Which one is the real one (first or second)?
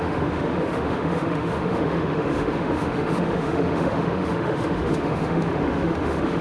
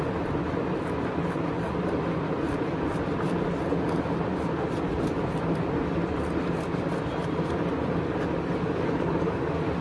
second